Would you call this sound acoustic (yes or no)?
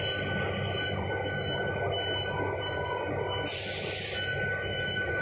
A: yes